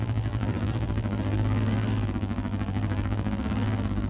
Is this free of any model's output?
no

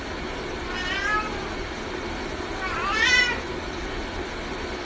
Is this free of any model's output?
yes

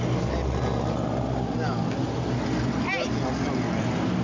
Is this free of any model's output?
yes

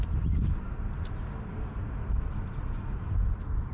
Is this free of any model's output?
yes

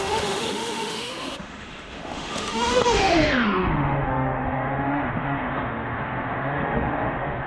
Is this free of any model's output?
no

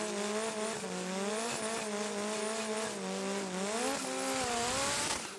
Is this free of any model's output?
yes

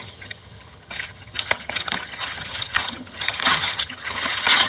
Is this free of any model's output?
no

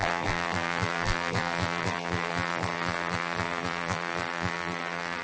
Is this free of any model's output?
no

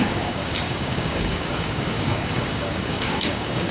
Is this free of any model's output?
no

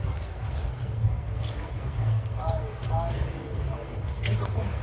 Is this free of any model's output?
no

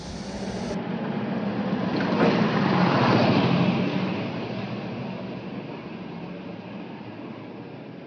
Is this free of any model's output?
yes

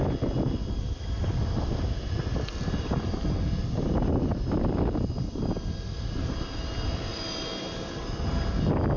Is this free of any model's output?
yes